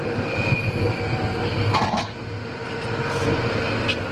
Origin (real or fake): real